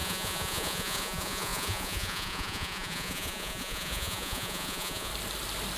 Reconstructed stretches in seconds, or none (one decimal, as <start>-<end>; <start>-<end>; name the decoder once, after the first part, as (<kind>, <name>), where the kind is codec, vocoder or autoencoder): 0.0-5.1 (vocoder, Vocos)